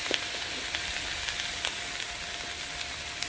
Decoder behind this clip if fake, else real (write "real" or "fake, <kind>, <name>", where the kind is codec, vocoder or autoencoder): real